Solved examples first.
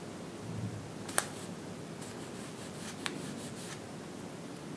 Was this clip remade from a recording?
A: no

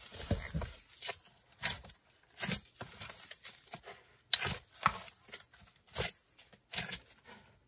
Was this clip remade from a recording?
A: no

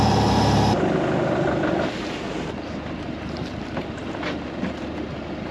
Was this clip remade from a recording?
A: no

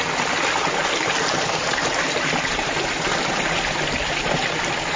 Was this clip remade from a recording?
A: no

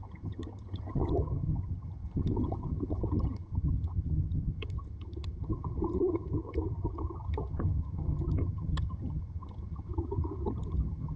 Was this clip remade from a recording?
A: yes